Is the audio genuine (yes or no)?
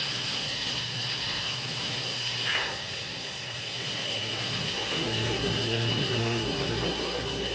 no